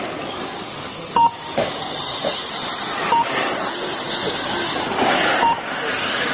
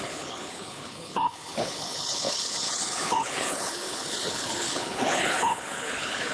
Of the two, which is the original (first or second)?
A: first